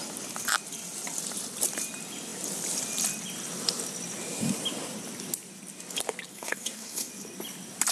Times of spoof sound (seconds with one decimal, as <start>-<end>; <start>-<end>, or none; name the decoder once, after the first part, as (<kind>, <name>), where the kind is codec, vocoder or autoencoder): 6.3-7.1 (codec, SNAC)